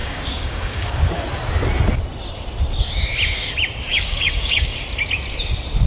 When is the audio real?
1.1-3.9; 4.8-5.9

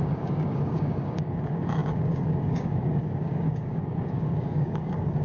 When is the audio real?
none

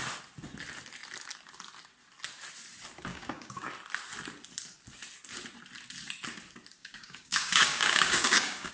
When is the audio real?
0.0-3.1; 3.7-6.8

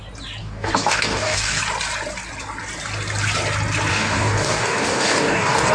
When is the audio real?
0.0-0.4; 1.6-3.9

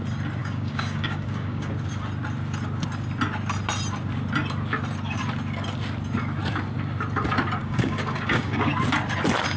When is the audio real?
0.0-0.4; 1.7-7.6; 8.7-9.6